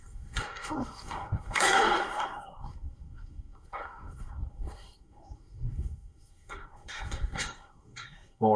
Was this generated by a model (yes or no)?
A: yes